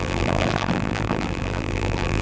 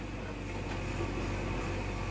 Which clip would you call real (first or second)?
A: second